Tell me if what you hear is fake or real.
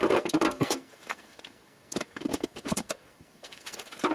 fake